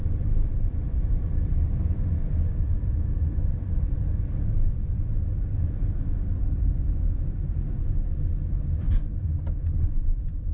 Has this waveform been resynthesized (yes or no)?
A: yes